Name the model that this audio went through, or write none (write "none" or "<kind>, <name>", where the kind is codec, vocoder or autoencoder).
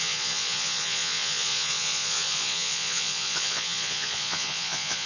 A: vocoder, Vocos